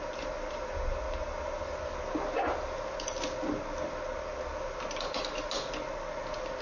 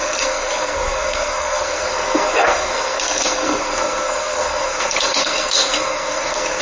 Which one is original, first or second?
first